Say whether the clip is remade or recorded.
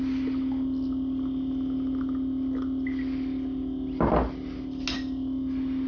recorded